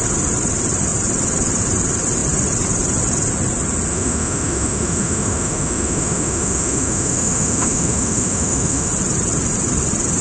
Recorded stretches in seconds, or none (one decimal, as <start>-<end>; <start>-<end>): 0.0-3.9; 8.9-10.2